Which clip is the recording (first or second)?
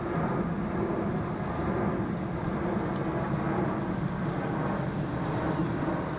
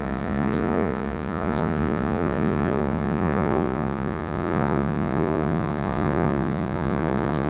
first